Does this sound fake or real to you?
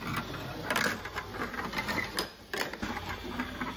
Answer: real